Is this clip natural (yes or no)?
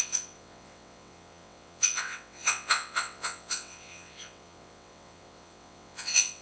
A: no